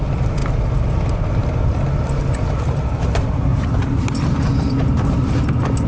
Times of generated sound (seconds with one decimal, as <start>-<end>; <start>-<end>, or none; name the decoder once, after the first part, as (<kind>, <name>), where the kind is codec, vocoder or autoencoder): none